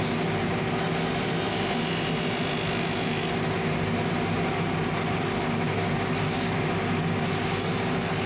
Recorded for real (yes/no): yes